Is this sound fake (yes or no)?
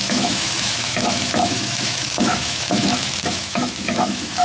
yes